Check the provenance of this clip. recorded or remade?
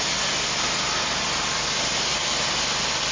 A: recorded